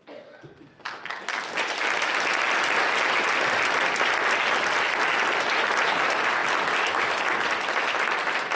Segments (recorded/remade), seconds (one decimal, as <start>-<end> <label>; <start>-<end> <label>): 0.0-8.6 recorded